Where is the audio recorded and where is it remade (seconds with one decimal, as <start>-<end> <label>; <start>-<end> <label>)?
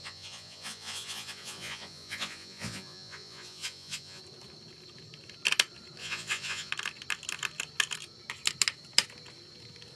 0.0-4.2 remade; 4.2-6.0 recorded; 6.0-6.7 remade; 6.7-10.0 recorded